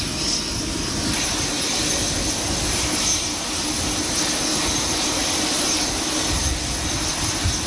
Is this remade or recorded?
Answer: recorded